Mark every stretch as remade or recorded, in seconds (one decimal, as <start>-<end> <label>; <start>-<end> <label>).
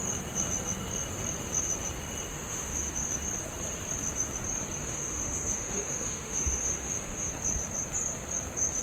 0.0-2.3 recorded; 2.3-2.9 remade; 2.9-4.8 recorded; 4.8-7.3 remade; 7.3-8.8 recorded